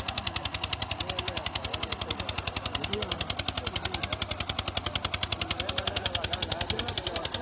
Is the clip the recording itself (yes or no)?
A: yes